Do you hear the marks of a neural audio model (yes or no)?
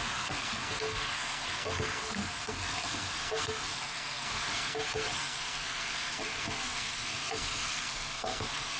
yes